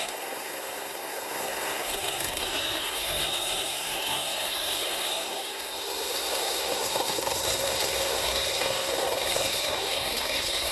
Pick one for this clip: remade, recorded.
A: remade